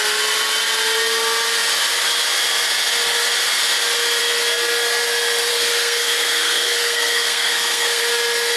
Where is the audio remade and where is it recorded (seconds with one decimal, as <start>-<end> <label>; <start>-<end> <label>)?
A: 0.0-5.5 recorded; 5.5-8.0 remade; 8.0-8.6 recorded